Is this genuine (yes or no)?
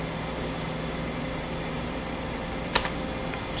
yes